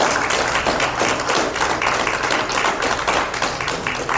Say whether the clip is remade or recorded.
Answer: recorded